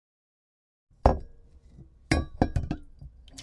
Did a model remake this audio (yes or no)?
no